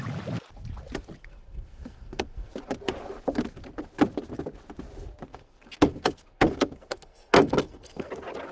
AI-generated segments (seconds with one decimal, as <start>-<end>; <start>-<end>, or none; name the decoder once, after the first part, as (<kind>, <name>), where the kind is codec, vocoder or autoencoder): 1.2-2.5 (codec, SNAC); 5.3-8.1